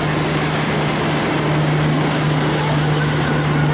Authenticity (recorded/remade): recorded